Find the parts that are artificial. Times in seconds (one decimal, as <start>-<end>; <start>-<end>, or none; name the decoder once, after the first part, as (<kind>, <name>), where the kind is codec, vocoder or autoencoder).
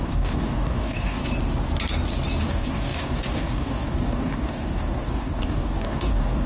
0.0-1.2 (codec, DAC); 2.4-6.5